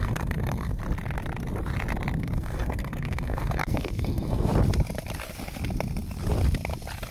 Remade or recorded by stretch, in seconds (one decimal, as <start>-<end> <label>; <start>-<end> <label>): 0.0-0.8 remade; 0.8-2.2 recorded; 2.2-4.5 remade; 4.5-7.1 recorded